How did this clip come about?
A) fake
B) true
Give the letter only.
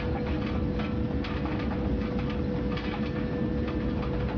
B